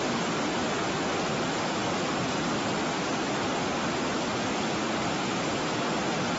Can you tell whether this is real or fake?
real